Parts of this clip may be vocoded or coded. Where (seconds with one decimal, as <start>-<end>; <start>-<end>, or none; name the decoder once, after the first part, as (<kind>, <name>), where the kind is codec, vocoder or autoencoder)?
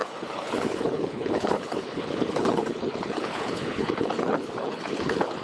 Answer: 0.0-5.4 (codec, HILCodec)